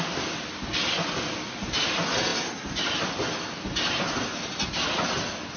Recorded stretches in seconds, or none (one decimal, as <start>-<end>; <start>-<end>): 0.0-5.6